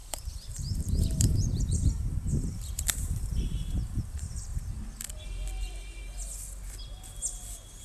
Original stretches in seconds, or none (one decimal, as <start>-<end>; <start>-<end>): 4.7-7.8